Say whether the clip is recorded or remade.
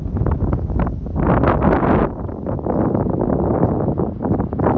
recorded